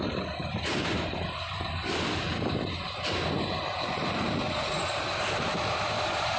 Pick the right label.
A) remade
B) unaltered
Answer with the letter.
A